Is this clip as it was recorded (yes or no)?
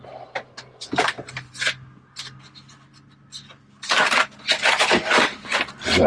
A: yes